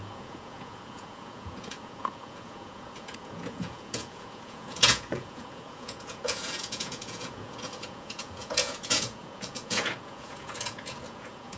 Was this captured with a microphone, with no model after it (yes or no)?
no